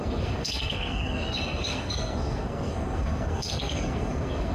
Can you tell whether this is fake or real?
fake